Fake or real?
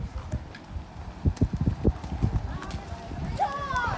real